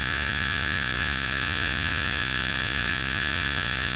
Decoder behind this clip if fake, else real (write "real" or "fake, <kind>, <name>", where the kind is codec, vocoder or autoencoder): fake, vocoder, Vocos